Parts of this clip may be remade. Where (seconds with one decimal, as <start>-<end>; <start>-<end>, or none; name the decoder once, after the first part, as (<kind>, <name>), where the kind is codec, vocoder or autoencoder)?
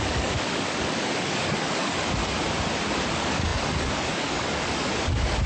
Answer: 0.0-2.2 (codec, DAC); 3.1-5.5